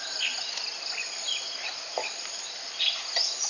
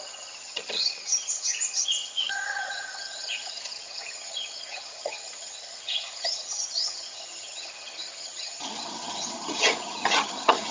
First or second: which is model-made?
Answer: second